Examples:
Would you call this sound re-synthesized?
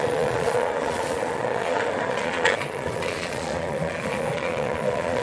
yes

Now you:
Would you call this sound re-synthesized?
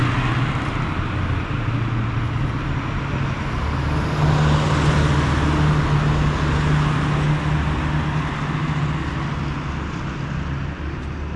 no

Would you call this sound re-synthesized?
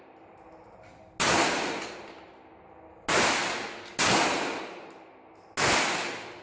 no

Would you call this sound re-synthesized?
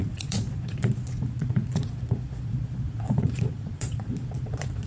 yes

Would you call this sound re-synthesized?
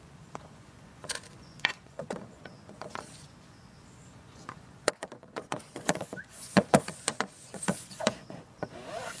yes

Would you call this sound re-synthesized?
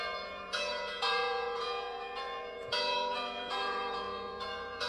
yes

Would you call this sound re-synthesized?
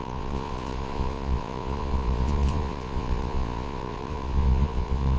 yes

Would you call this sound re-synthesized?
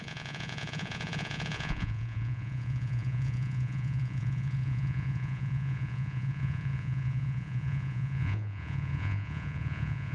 yes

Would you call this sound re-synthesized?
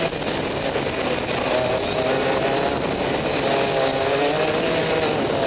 no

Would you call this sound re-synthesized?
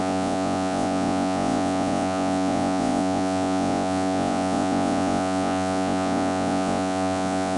yes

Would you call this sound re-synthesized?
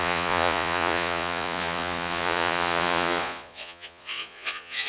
yes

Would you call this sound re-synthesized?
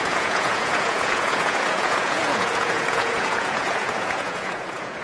yes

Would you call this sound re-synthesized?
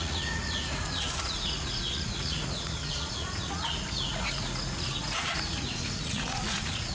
yes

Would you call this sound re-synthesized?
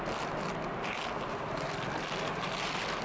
no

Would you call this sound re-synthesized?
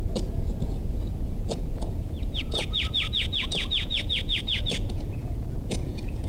yes